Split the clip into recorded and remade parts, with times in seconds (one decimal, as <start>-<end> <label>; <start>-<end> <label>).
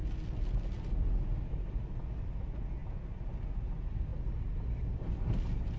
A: 0.0-4.1 recorded; 4.1-5.1 remade; 5.1-5.8 recorded